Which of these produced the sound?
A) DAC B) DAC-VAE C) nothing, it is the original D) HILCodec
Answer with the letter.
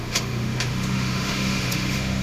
B